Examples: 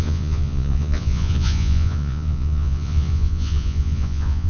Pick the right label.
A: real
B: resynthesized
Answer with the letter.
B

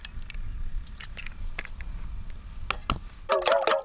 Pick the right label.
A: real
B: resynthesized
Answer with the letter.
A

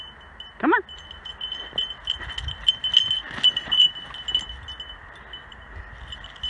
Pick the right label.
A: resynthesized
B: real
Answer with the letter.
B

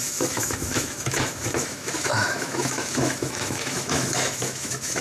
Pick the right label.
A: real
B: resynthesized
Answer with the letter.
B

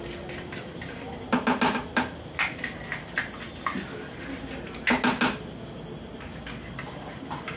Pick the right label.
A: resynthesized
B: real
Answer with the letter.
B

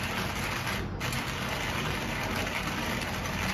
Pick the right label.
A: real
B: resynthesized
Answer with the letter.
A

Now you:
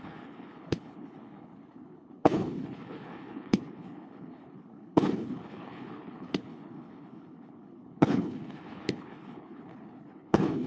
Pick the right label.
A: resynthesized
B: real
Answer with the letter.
A